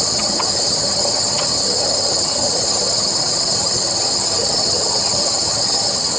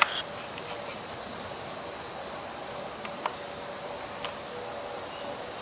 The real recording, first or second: second